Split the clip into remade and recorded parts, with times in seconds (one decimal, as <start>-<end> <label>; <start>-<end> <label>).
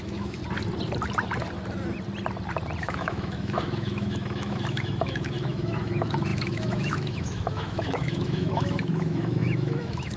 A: 0.0-0.4 remade; 0.4-2.8 recorded; 2.8-10.2 remade